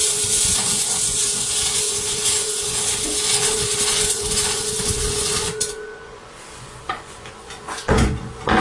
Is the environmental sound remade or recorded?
remade